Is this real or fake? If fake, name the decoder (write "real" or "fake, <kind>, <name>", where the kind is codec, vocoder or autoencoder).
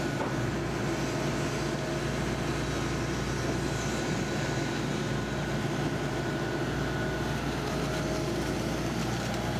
real